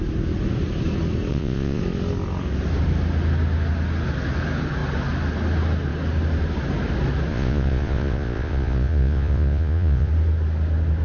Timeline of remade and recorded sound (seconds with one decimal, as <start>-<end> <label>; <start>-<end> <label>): 0.0-1.3 recorded; 1.3-1.8 remade; 1.8-7.3 recorded; 7.3-10.1 remade; 10.1-11.0 recorded